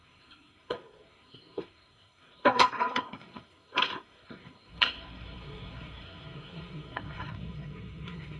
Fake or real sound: fake